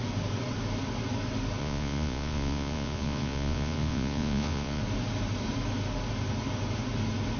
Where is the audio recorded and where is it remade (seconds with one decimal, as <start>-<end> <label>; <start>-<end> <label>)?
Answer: 0.0-1.6 recorded; 1.6-4.8 remade; 4.8-7.4 recorded